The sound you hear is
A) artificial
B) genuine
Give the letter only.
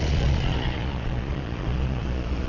A